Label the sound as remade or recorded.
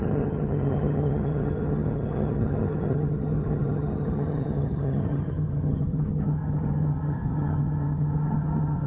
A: remade